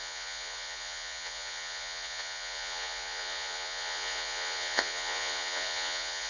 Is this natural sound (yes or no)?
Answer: no